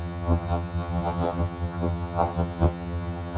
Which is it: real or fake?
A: fake